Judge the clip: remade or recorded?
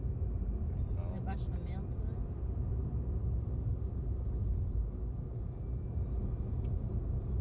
recorded